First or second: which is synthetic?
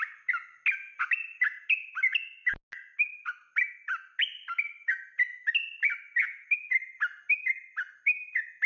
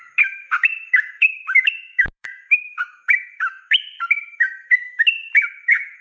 second